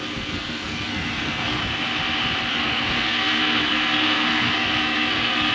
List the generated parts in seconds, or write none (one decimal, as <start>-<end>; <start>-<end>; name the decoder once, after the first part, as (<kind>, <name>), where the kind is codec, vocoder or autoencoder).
0.0-1.6 (codec, SNAC); 2.5-5.5